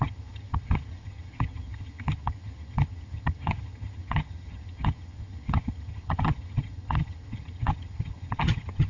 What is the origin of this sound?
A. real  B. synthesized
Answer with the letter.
B